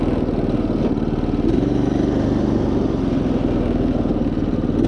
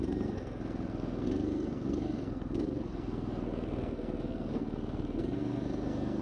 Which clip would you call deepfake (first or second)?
second